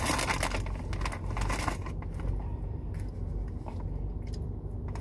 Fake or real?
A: real